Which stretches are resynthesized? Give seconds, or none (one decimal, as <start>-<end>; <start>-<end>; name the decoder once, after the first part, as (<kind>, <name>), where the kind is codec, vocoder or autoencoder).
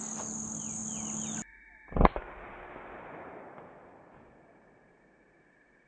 none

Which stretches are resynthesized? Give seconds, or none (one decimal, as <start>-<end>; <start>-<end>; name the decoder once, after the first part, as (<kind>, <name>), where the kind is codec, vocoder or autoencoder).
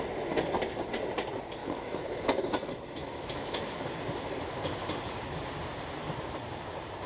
1.6-2.2 (autoencoder, DAC-VAE); 3.0-3.6